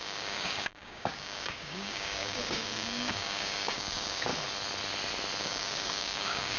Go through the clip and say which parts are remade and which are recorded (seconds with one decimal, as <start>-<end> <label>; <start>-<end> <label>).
0.0-4.3 remade; 4.3-5.4 recorded; 5.4-6.6 remade